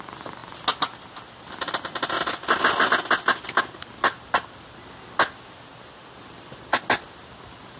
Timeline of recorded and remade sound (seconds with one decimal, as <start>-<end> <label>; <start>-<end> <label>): 0.0-7.8 recorded